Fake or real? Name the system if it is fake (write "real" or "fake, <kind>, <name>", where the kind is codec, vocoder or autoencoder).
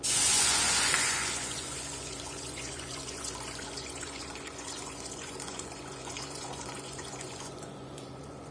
fake, vocoder, Vocos